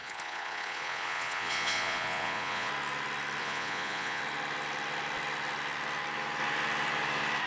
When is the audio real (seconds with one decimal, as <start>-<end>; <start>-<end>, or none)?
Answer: 2.7-3.4; 4.2-7.5